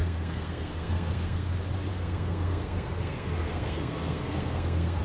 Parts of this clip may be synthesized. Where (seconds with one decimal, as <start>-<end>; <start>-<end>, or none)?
0.0-1.5; 1.9-5.0